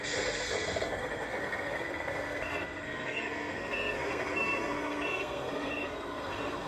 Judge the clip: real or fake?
fake